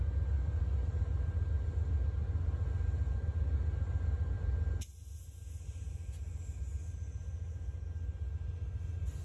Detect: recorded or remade recorded